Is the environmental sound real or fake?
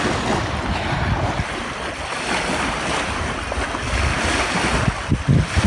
real